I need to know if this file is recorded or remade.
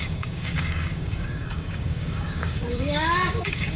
remade